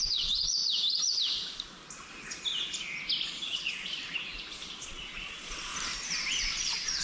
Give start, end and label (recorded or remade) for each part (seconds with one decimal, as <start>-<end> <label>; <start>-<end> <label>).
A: 0.0-0.6 remade; 0.6-3.4 recorded; 3.4-3.9 remade; 3.9-4.7 recorded; 4.7-5.7 remade; 5.7-6.4 recorded; 6.4-7.0 remade